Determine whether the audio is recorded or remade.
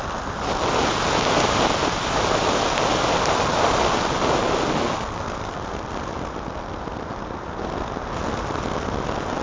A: recorded